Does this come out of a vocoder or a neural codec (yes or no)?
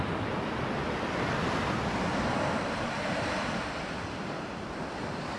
no